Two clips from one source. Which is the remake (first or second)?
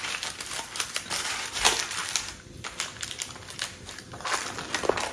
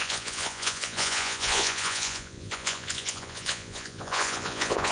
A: second